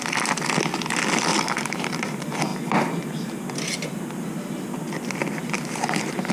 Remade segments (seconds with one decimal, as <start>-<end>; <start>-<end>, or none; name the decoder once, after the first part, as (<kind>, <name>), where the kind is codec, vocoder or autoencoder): 1.3-1.9 (vocoder, BigVGAN v2)